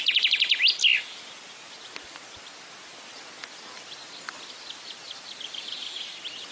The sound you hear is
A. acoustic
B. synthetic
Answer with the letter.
A